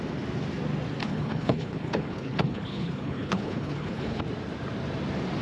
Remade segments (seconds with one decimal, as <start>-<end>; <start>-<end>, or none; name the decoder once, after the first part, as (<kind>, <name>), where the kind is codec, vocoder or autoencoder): 1.0-4.2 (codec, HILCodec)